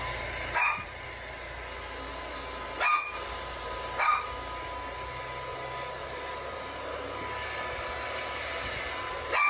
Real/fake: real